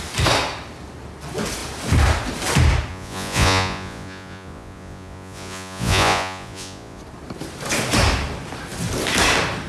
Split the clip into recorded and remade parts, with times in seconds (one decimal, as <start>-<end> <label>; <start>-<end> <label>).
0.0-2.9 recorded; 2.9-7.0 remade; 7.0-9.7 recorded